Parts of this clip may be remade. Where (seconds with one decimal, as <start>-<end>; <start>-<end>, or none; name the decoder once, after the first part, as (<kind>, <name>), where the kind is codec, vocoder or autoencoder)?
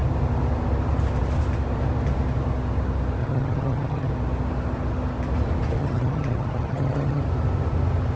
3.2-4.1 (vocoder, HiFi-GAN); 5.8-7.2